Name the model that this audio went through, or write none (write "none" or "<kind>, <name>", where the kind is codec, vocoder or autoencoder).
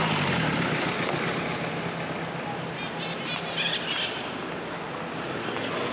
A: none